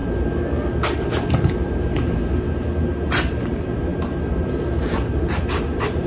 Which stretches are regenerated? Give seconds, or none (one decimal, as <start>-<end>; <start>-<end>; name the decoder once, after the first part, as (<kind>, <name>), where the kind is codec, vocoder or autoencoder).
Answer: 1.3-6.1 (vocoder, BigVGAN v2)